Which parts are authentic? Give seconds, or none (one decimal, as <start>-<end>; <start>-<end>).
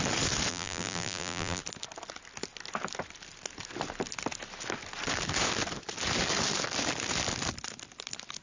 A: 0.0-0.5; 1.6-8.4